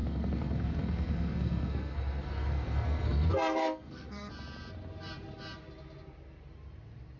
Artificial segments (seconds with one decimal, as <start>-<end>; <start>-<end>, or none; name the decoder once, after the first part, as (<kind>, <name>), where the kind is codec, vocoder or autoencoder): 0.0-4.3 (codec, SNAC)